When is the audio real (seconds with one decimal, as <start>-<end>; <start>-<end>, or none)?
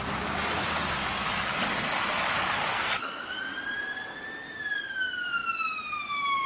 0.0-2.6; 3.4-6.5